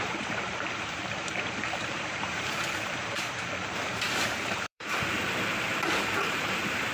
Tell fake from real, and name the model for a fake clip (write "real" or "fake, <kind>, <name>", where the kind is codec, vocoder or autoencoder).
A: fake, vocoder, BigVGAN v2